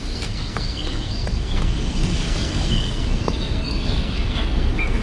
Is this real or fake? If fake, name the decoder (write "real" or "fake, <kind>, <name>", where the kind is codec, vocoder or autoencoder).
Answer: fake, codec, SNAC